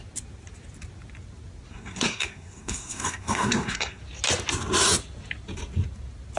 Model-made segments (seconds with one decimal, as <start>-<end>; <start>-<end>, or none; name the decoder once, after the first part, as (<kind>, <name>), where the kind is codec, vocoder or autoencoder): 1.7-4.0 (codec, SNAC)

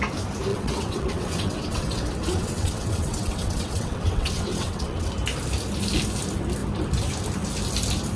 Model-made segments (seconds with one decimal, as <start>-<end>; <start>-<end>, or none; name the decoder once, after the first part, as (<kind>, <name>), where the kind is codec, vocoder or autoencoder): 0.5-5.1 (vocoder, WaveNeXt)

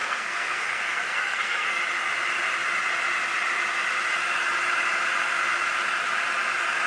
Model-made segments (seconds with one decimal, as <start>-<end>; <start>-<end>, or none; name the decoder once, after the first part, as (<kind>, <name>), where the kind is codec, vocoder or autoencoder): 0.0-1.8 (codec, SNAC)

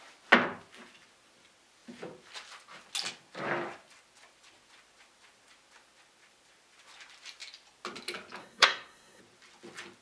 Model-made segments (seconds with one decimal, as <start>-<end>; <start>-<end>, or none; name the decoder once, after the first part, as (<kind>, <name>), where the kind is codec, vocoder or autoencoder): 8.4-9.2 (codec, SNAC)

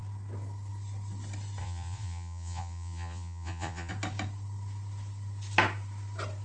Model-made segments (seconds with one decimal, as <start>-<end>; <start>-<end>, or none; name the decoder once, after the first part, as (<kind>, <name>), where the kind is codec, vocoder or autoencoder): 1.6-3.9 (vocoder, Vocos)